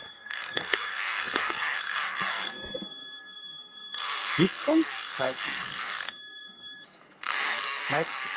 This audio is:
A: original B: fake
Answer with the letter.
B